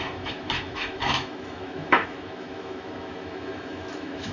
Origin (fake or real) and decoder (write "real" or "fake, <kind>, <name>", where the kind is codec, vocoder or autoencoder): fake, autoencoder, DAC-VAE